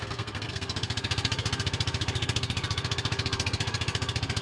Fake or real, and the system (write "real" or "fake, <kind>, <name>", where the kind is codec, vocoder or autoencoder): fake, codec, SNAC